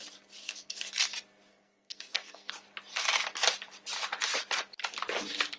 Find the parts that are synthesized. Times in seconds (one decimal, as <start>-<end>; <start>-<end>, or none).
0.4-0.9; 1.5-2.5

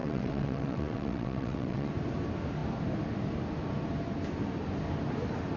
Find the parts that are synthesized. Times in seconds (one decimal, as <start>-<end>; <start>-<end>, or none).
0.0-1.9

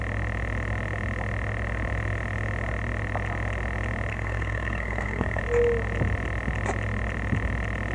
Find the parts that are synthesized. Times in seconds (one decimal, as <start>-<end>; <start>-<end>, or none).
4.1-5.4

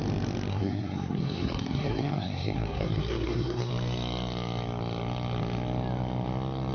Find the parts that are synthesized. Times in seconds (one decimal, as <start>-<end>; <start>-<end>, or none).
0.5-3.7

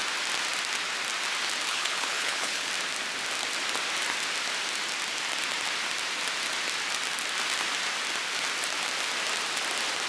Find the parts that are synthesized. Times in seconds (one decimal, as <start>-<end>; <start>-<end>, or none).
1.7-2.7

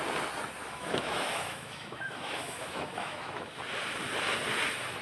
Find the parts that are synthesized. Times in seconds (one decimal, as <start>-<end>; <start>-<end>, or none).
0.6-3.6

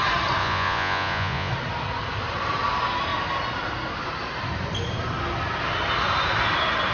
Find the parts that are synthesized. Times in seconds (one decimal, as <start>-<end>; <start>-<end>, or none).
0.4-1.5

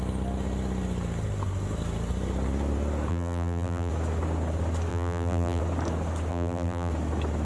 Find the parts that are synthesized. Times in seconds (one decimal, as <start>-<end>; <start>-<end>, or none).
3.1-3.9; 4.9-5.6; 6.3-6.9